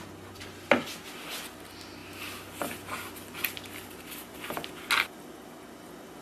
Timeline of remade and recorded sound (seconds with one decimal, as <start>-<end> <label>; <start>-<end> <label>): 0.0-6.2 recorded

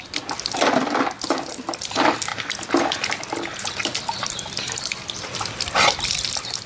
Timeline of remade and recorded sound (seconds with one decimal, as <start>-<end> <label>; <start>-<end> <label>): 0.0-3.9 recorded; 3.9-5.8 remade; 5.8-6.7 recorded

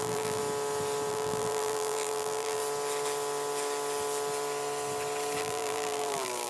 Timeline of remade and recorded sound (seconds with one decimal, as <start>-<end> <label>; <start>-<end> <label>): 0.0-0.4 remade; 0.4-1.1 recorded; 1.1-2.6 remade; 2.6-5.4 recorded; 5.4-6.5 remade

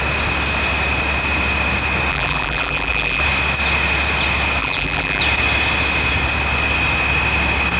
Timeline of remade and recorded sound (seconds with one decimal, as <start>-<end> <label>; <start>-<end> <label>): 0.0-2.1 recorded; 2.1-3.2 remade; 3.2-4.6 recorded; 4.6-5.2 remade; 5.2-7.8 recorded

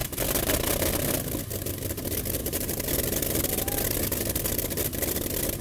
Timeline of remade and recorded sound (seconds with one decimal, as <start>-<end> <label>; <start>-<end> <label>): 0.0-2.4 recorded; 2.4-2.9 remade; 2.9-5.6 recorded

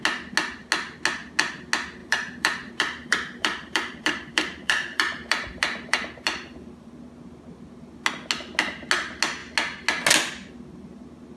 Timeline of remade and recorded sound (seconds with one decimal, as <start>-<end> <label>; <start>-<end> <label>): 0.0-2.0 recorded; 2.0-6.9 remade; 6.9-11.4 recorded

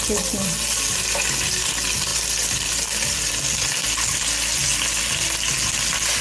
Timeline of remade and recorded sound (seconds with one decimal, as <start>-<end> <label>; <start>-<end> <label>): 0.0-2.1 recorded; 2.1-3.3 remade; 3.3-6.2 recorded

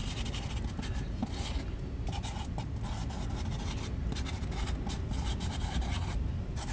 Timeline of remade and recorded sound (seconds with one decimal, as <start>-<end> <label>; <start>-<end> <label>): 0.0-0.7 recorded; 0.7-1.2 remade; 1.2-5.2 recorded; 5.2-6.7 remade